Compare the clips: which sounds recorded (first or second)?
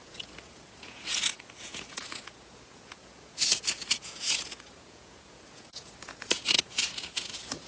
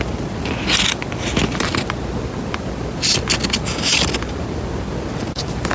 second